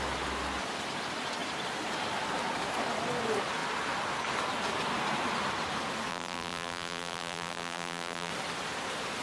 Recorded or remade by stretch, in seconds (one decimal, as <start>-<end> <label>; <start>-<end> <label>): 0.0-6.1 recorded; 6.1-8.3 remade; 8.3-9.2 recorded